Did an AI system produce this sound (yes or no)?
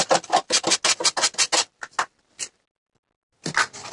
no